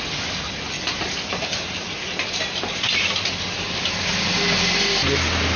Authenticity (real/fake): real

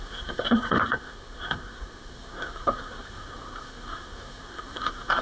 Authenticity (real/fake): fake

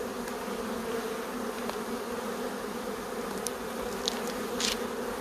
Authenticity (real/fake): real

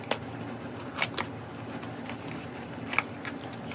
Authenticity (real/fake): real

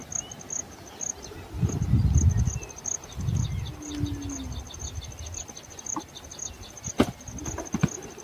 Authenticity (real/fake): real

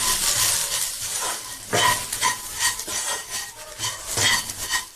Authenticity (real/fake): real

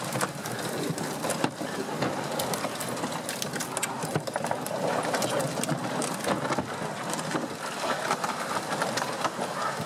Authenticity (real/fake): real